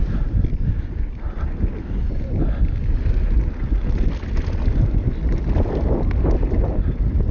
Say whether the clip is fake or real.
real